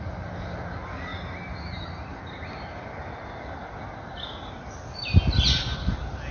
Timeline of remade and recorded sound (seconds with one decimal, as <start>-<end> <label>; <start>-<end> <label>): 0.0-6.3 recorded